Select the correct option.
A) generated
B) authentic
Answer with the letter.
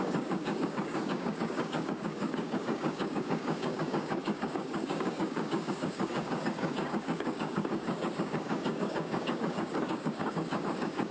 A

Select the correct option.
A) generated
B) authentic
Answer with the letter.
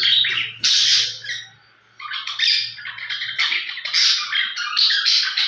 B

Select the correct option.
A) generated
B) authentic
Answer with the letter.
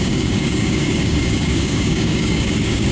A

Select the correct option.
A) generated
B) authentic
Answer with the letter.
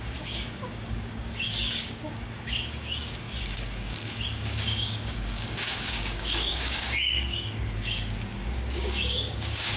A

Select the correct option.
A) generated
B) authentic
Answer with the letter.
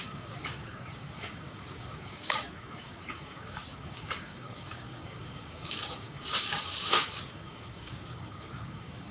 A